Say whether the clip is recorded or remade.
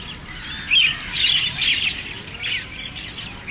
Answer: recorded